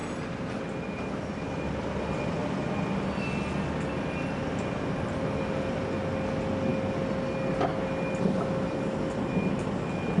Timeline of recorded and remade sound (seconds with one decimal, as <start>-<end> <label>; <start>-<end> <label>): 0.0-10.2 recorded